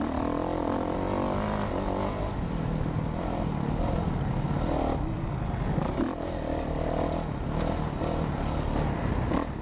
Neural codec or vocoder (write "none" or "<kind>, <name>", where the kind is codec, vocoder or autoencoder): none